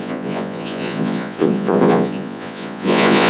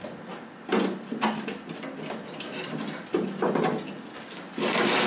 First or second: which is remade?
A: first